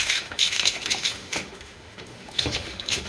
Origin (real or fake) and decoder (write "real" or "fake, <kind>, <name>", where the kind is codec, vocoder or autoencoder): fake, autoencoder, DAC-VAE